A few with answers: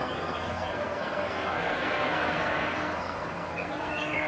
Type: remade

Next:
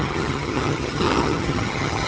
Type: remade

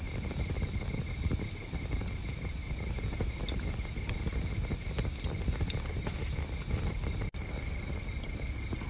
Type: recorded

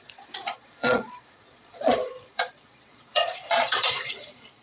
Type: remade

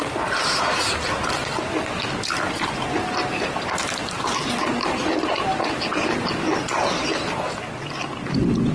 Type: recorded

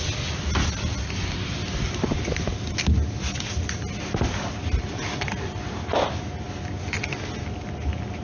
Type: recorded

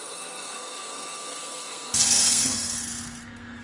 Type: remade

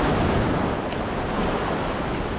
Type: recorded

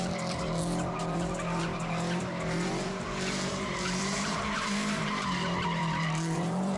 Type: remade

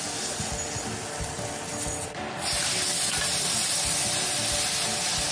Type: recorded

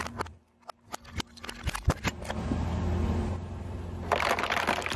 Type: recorded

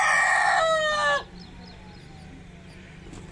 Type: recorded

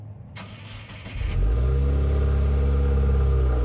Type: recorded